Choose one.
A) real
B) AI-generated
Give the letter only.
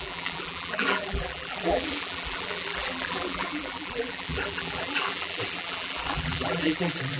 B